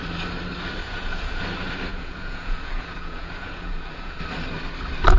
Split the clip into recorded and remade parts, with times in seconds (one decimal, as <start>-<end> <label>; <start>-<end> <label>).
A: 0.0-0.8 recorded; 0.8-1.4 remade; 1.4-1.9 recorded; 1.9-4.2 remade; 4.2-5.2 recorded